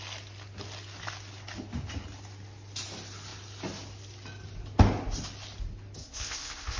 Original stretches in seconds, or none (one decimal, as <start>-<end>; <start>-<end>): 0.0-6.0